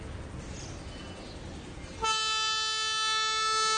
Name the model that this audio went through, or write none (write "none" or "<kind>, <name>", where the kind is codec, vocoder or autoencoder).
none